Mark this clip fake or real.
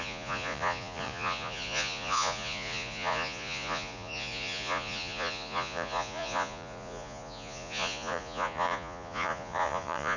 fake